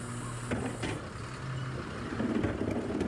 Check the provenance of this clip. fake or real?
real